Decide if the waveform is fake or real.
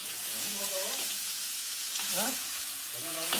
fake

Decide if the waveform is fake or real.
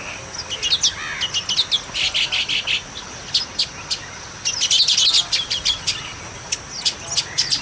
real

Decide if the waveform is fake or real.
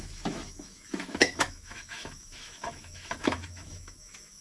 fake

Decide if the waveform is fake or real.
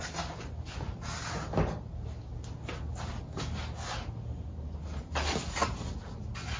real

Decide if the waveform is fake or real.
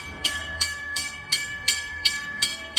fake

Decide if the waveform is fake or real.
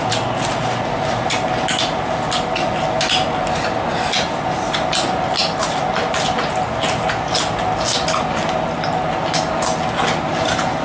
real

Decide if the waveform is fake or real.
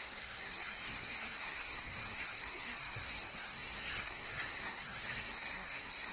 fake